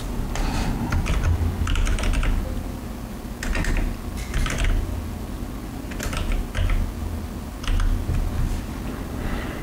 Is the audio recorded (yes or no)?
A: yes